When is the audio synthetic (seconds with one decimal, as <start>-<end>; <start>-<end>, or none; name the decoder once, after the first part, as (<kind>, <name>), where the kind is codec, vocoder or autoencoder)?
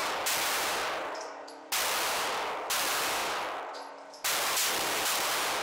none